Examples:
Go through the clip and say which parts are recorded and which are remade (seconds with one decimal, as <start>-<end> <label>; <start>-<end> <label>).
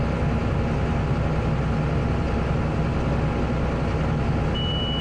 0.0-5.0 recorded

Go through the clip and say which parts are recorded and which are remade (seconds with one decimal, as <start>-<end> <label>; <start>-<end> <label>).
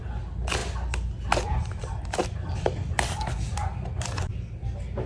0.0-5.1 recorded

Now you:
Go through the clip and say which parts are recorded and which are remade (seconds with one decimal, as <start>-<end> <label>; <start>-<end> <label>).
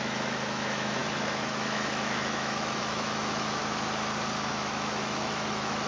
0.0-3.6 remade; 3.6-4.5 recorded; 4.5-5.9 remade